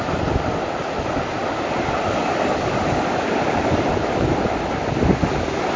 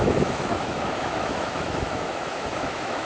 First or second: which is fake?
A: second